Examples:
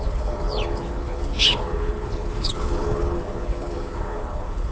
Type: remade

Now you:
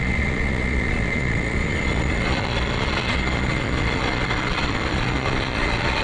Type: remade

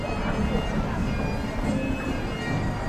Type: recorded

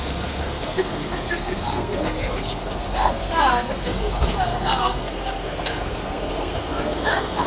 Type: remade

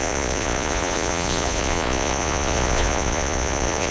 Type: remade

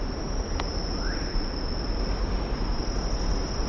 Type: recorded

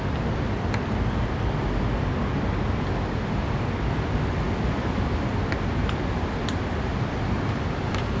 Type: recorded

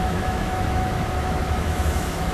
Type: remade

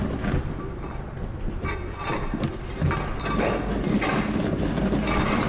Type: recorded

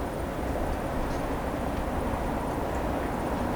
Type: recorded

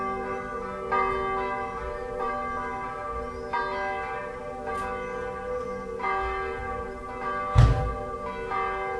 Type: recorded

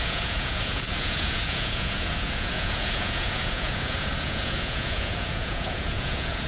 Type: remade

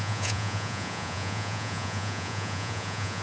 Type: remade